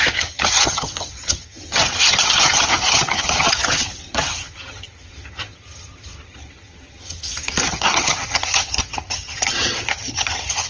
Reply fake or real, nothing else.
fake